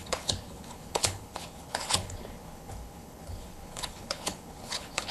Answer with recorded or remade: remade